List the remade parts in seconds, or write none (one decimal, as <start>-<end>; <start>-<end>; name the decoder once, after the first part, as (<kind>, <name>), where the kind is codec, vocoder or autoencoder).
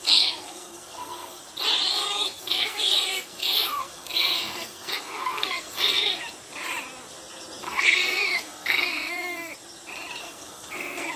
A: 0.0-1.4 (codec, SNAC); 1.9-6.2; 7.6-9.5; 10.2-11.2